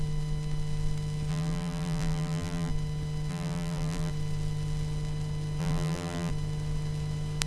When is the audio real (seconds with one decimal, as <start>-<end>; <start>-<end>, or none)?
0.0-1.3; 2.7-3.3; 4.1-5.6; 6.3-7.5